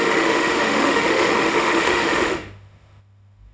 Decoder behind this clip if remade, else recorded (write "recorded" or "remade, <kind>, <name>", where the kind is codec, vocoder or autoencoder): remade, autoencoder, DAC-VAE